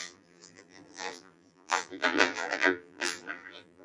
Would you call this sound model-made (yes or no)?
yes